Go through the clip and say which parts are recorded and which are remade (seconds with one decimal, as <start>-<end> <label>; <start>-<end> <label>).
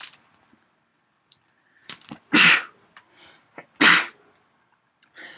0.0-0.9 recorded; 0.9-3.2 remade; 3.2-5.4 recorded